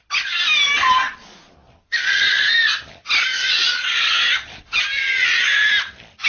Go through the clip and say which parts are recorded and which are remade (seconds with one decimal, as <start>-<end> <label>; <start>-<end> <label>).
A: 0.0-3.3 recorded; 3.3-4.8 remade; 4.8-6.3 recorded